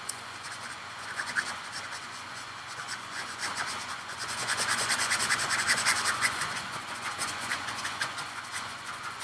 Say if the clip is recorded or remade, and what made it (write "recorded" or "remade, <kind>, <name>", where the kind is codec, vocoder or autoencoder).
remade, vocoder, Vocos